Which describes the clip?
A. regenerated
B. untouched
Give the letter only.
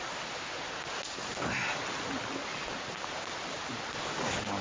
B